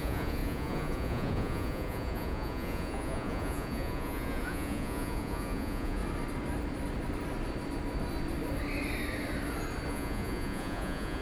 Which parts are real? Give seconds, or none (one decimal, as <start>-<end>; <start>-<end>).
6.0-9.9